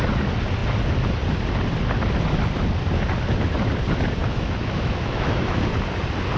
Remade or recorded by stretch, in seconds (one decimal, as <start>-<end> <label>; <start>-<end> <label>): 0.0-4.2 recorded; 4.2-5.6 remade; 5.6-6.4 recorded

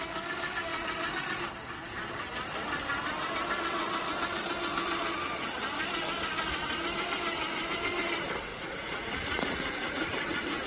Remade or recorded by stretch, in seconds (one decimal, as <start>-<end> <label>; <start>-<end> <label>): 0.0-8.5 recorded; 8.5-10.7 remade

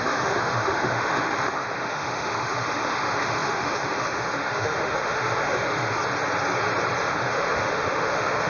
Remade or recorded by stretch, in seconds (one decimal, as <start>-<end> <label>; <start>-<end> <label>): 0.0-6.0 remade; 6.0-7.0 recorded; 7.0-8.5 remade